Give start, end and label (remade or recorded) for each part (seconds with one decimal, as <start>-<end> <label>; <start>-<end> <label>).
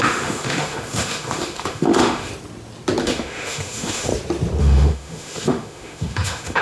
0.0-2.3 remade; 2.3-3.0 recorded; 3.0-4.1 remade; 4.1-4.6 recorded; 4.6-6.6 remade